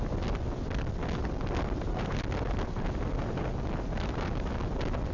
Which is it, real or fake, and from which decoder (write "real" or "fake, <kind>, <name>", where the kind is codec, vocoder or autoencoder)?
real